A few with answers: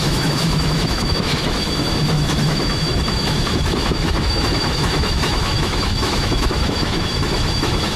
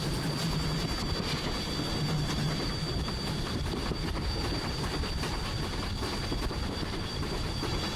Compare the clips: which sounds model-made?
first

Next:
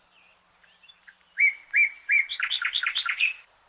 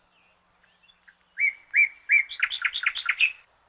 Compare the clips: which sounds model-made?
first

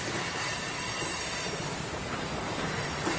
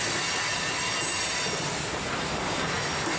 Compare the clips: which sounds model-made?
first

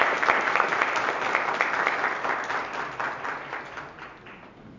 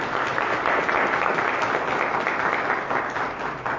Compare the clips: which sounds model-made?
first